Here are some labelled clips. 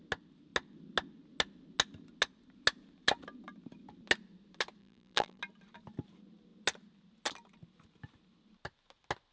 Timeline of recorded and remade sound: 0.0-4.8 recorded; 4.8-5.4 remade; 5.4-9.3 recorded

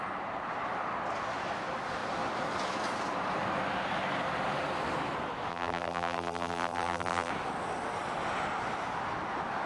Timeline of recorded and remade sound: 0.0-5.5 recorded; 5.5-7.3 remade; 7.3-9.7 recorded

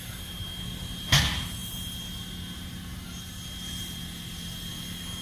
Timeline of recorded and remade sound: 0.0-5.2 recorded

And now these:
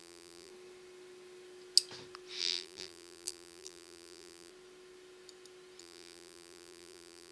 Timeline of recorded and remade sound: 0.0-0.5 remade; 0.5-2.4 recorded; 2.4-4.5 remade; 4.5-5.8 recorded; 5.8-7.3 remade

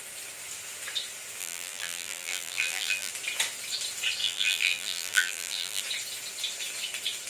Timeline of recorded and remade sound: 0.0-1.4 recorded; 1.4-3.1 remade; 3.1-4.2 recorded; 4.2-5.8 remade; 5.8-7.3 recorded